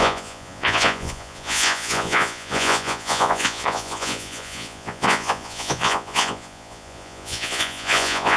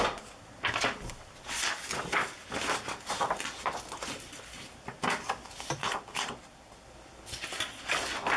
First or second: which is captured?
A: second